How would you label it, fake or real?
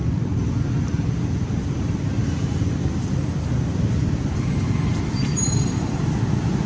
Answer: real